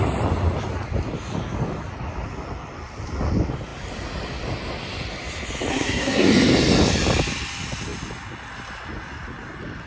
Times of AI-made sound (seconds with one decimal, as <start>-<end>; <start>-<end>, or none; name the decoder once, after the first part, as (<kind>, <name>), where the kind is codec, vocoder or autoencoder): 5.7-6.3 (codec, SNAC)